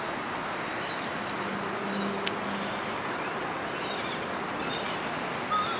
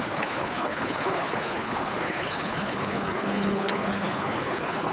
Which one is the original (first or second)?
first